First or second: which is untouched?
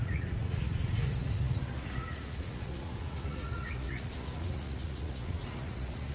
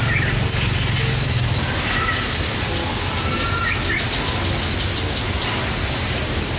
second